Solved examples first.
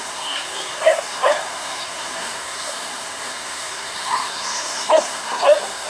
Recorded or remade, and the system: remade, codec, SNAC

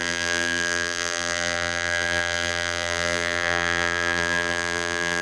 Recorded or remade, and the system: remade, vocoder, BigVGAN v2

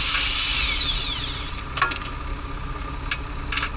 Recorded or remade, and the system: recorded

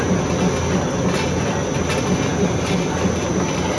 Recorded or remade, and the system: recorded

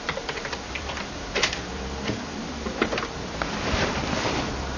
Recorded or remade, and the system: remade, vocoder, BigVGAN v2